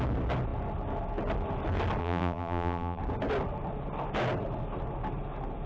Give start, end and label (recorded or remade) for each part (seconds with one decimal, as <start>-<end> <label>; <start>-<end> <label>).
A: 0.0-2.0 recorded; 2.0-3.0 remade; 3.0-5.7 recorded